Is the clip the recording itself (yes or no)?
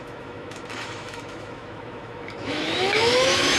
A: no